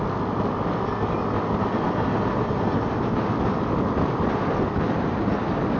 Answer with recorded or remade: recorded